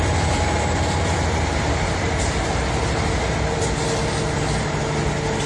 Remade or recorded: recorded